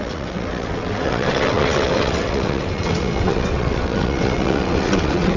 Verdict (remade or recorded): remade